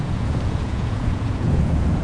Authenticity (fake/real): fake